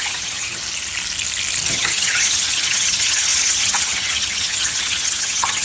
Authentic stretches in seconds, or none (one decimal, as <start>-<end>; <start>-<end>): 0.6-1.7

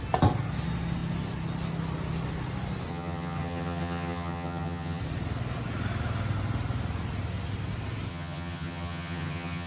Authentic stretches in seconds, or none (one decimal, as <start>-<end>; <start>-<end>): 0.0-2.9; 5.0-8.1

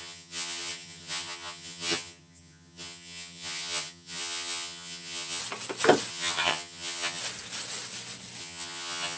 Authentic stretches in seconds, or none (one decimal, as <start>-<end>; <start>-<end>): 5.4-6.1; 7.2-8.4

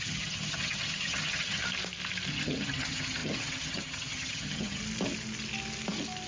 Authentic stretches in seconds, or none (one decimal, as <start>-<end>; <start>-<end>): 1.6-2.3; 4.8-6.3